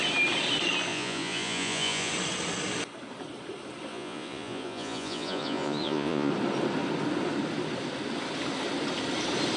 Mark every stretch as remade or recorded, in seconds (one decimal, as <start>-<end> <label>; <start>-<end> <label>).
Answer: 0.0-0.9 recorded; 0.9-2.1 remade; 2.1-3.9 recorded; 3.9-6.3 remade; 6.3-9.6 recorded